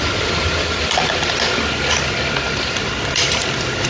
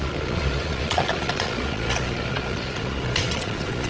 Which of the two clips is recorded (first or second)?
first